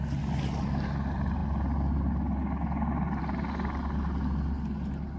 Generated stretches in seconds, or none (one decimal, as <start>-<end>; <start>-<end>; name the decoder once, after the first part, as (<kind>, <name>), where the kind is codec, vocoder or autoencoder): none